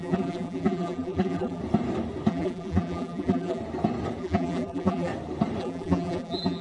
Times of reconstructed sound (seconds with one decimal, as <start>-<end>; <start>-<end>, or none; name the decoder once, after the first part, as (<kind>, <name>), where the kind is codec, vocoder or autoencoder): 0.0-1.6 (vocoder, BigVGAN v2); 2.3-3.6; 4.2-5.1; 5.6-6.6